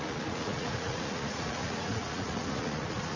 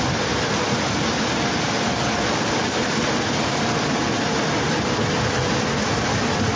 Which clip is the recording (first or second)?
second